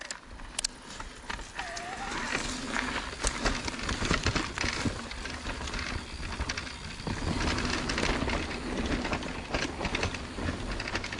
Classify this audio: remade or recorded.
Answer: recorded